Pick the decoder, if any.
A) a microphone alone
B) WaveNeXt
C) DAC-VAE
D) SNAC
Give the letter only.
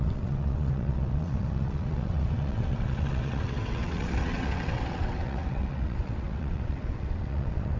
B